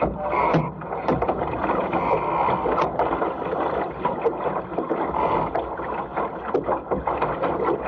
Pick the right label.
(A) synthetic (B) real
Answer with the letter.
B